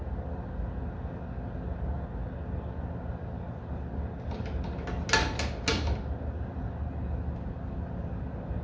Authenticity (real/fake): real